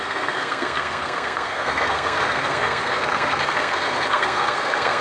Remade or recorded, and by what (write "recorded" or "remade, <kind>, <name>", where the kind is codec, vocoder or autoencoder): remade, codec, SNAC